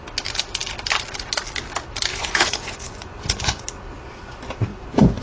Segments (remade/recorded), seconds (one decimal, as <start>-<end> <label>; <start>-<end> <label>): 0.0-2.1 recorded; 2.1-3.6 remade; 3.6-4.7 recorded; 4.7-5.2 remade